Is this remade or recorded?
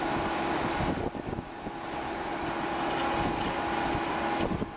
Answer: recorded